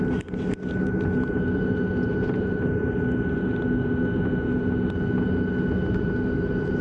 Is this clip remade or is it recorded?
recorded